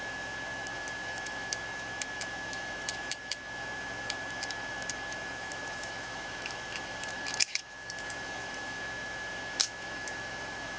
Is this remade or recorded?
remade